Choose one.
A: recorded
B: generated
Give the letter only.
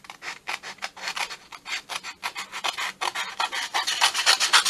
A